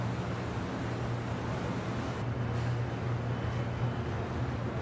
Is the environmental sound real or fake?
real